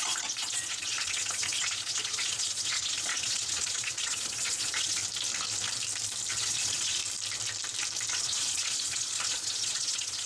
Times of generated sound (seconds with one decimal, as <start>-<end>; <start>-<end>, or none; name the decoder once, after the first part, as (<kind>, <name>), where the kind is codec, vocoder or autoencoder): 0.0-5.0 (vocoder, Vocos); 6.3-7.0; 8.1-10.3

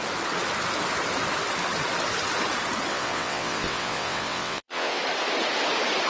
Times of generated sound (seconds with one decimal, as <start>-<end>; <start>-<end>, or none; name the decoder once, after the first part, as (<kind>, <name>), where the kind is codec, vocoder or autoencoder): 2.9-5.0 (vocoder, WaveNeXt)

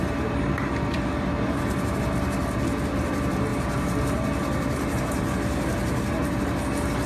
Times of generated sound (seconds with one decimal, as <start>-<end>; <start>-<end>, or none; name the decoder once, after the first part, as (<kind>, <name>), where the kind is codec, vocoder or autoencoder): none

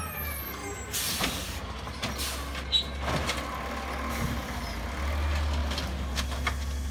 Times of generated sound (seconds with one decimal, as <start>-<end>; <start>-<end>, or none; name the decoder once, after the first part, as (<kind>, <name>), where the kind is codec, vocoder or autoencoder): 0.6-2.1 (vocoder, BigVGAN v2); 5.6-6.2

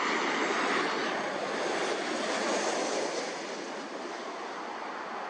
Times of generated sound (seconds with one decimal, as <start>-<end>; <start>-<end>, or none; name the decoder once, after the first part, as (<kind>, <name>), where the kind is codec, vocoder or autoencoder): none

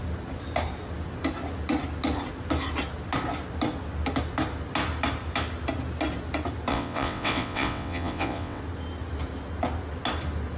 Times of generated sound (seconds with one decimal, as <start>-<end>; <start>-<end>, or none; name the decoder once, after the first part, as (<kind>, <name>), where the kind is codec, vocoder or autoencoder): 6.7-8.6 (vocoder, WaveNeXt)

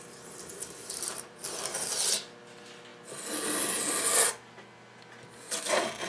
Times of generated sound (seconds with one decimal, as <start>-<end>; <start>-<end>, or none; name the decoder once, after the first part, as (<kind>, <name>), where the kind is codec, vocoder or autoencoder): 0.5-1.4 (vocoder, BigVGAN v2)

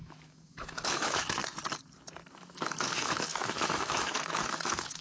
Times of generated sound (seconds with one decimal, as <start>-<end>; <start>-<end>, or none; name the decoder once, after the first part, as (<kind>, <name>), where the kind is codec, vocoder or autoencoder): 0.0-1.4 (autoencoder, DAC-VAE); 2.4-5.0